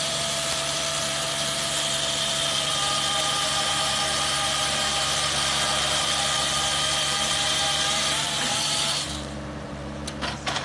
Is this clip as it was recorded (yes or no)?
no